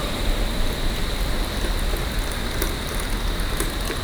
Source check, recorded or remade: recorded